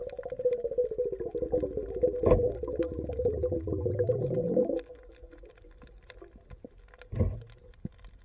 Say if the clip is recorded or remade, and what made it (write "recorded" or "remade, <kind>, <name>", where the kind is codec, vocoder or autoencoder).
recorded